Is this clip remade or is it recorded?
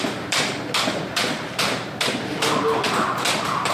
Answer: recorded